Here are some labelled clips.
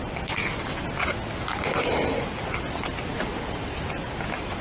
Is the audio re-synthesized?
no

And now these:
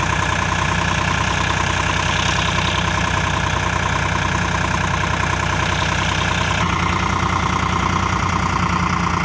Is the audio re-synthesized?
no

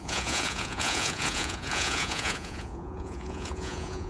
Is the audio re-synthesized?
yes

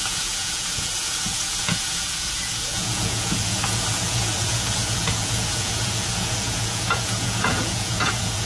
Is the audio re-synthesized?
yes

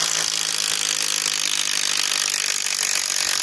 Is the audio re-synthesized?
no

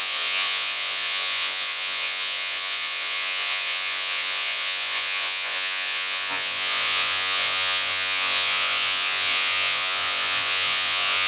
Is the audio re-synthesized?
yes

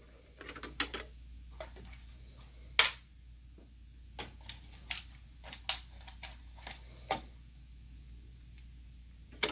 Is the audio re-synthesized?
no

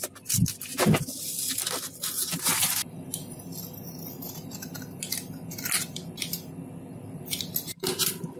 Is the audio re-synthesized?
no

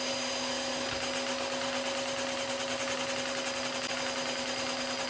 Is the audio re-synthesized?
no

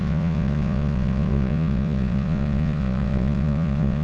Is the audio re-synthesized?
yes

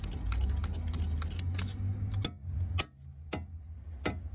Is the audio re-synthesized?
no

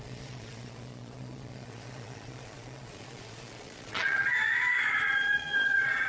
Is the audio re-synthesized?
yes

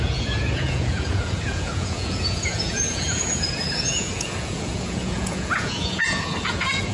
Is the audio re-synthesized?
yes